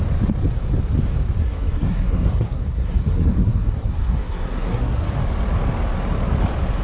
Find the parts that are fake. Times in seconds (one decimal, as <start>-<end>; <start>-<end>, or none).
1.4-5.1